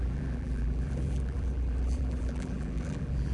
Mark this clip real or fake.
fake